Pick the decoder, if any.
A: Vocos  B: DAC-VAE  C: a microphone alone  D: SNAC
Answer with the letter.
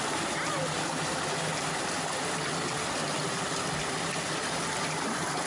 C